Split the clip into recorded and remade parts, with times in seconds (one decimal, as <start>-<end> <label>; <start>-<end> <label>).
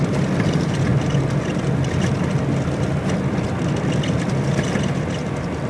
0.0-5.7 recorded